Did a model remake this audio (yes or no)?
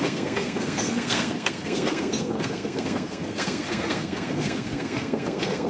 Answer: yes